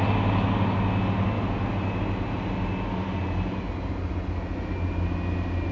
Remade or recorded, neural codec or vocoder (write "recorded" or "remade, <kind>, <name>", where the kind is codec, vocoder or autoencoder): recorded